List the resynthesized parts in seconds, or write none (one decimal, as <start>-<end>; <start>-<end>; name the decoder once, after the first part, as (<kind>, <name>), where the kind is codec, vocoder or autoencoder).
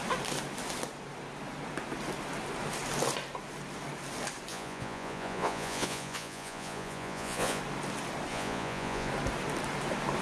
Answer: 4.5-7.6 (vocoder, Vocos); 8.3-9.1